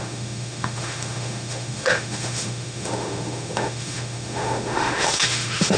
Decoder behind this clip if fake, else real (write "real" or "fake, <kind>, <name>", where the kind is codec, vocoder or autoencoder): fake, autoencoder, DAC-VAE